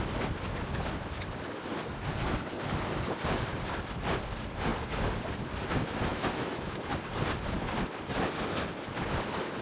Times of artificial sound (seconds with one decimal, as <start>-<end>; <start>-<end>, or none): 6.1-6.9